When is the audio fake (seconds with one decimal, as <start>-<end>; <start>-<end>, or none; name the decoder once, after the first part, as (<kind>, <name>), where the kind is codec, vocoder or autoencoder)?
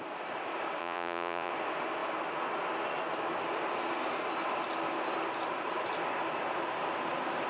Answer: 0.8-1.5 (vocoder, Vocos)